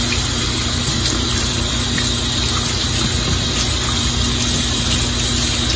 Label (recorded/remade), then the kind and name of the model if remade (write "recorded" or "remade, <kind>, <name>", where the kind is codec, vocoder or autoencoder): recorded